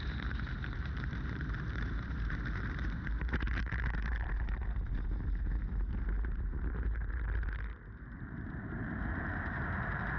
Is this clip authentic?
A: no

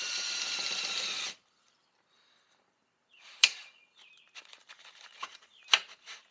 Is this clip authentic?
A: no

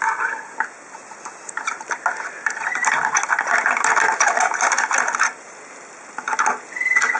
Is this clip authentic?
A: yes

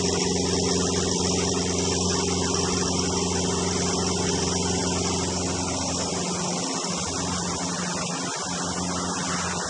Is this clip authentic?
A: yes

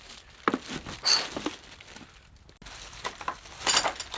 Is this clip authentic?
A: yes